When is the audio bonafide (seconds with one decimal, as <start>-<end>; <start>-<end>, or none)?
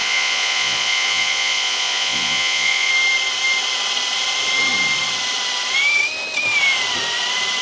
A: 2.9-7.6